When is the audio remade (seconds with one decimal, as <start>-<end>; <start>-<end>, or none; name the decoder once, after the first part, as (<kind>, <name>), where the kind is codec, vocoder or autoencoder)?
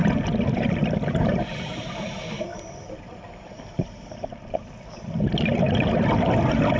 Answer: 1.1-2.5 (vocoder, BigVGAN v2); 6.2-6.8